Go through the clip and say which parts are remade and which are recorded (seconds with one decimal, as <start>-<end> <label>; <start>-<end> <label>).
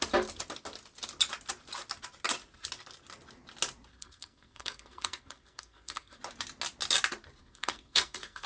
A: 0.0-3.9 recorded; 3.9-6.2 remade; 6.2-7.4 recorded; 7.4-8.5 remade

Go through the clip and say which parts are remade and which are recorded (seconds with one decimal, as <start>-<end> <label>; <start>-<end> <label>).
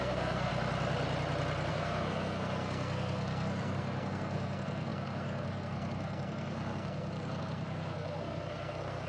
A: 0.0-0.5 remade; 0.5-1.7 recorded; 1.7-9.1 remade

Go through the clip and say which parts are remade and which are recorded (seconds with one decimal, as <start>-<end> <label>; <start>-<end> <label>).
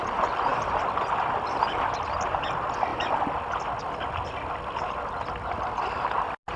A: 0.0-6.6 recorded